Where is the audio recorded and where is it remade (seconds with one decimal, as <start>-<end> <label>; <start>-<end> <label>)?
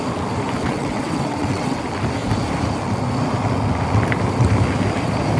0.0-0.6 recorded; 0.6-1.8 remade; 1.8-5.4 recorded